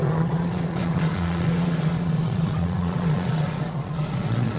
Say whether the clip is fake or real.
fake